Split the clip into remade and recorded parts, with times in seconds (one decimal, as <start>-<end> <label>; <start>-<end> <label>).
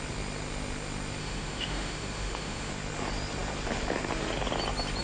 0.0-1.2 recorded; 1.2-2.7 remade; 2.7-5.0 recorded